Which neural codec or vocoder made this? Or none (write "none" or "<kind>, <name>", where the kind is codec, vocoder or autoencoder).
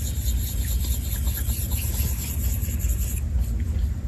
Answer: none